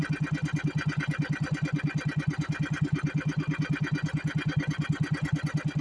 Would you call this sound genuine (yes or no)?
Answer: yes